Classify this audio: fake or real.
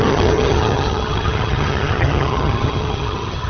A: fake